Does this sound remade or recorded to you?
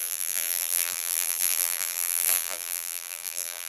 remade